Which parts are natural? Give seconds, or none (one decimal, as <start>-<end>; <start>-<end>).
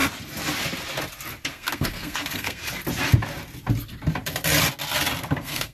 0.0-1.5; 2.6-5.3